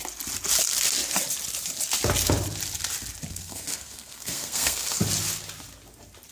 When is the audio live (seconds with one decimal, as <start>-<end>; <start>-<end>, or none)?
0.0-3.3; 5.0-6.3